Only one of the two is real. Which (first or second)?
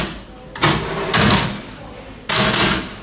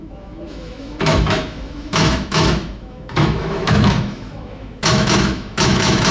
first